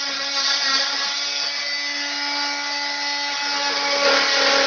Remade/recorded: recorded